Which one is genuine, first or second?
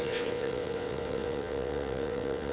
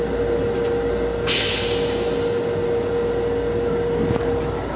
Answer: second